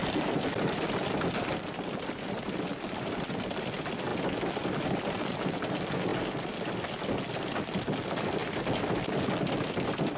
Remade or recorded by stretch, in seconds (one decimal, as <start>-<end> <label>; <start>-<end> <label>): 0.0-10.2 recorded